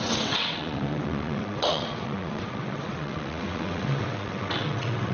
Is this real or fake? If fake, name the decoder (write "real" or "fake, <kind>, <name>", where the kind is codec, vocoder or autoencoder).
fake, vocoder, WaveNeXt